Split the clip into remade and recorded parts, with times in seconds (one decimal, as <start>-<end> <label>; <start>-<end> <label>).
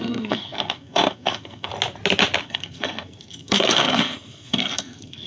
0.0-1.7 remade; 1.7-2.4 recorded; 2.4-5.3 remade